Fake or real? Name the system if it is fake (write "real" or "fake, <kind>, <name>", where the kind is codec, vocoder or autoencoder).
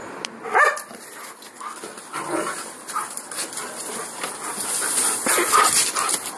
real